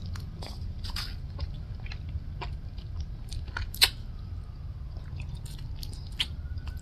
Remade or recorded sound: recorded